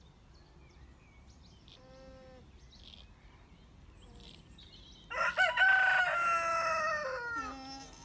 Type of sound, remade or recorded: recorded